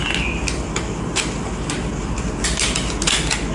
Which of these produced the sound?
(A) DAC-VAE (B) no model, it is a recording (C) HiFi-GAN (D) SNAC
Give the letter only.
B